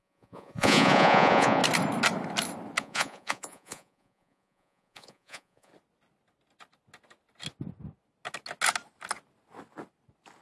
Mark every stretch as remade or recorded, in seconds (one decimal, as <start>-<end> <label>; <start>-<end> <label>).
0.0-1.6 remade; 1.6-2.8 recorded; 2.8-5.7 remade; 5.7-10.4 recorded